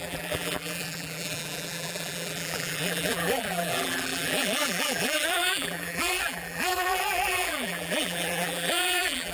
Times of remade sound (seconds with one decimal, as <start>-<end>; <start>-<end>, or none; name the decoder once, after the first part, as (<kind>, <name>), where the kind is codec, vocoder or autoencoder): 0.0-9.3 (vocoder, BigVGAN v2)

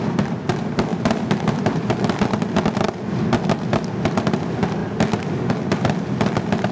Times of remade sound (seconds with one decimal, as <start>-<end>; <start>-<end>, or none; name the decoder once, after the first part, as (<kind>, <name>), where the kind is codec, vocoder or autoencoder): 0.9-1.9 (vocoder, BigVGAN v2)